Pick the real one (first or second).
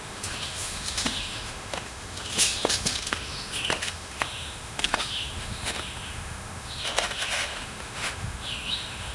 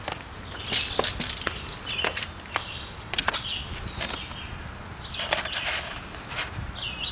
second